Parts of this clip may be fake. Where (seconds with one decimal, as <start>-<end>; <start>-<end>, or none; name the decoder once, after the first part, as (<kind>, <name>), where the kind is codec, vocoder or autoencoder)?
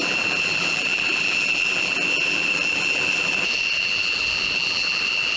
0.0-5.4 (vocoder, BigVGAN v2)